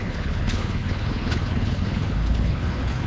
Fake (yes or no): yes